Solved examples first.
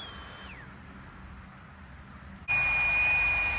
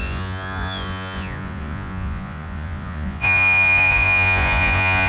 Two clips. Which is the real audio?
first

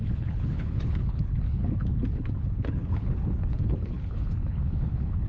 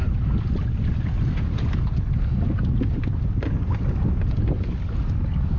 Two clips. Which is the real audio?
second